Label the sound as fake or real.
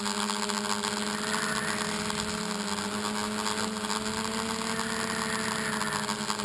real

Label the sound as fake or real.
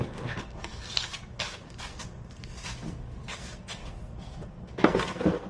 fake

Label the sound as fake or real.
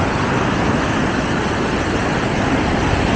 real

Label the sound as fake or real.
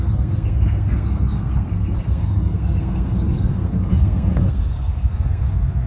fake